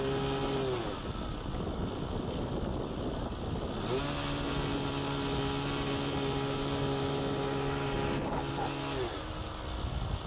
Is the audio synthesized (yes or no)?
no